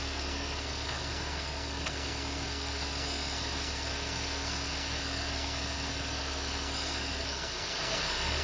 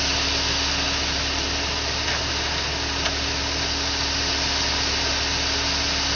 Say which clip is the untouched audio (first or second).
second